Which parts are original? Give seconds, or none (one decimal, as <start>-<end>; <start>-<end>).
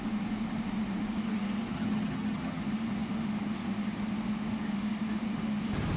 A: 0.0-1.7; 2.6-6.0